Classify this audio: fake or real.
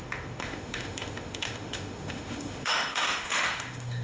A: fake